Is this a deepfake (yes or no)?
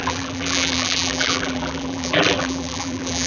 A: yes